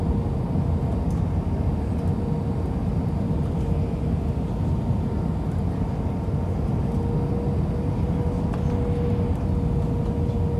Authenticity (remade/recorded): recorded